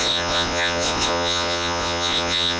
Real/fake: fake